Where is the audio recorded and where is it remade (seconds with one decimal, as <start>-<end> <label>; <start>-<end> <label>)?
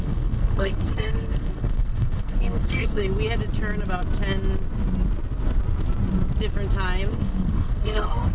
0.0-3.0 remade; 3.0-7.1 recorded; 7.1-8.3 remade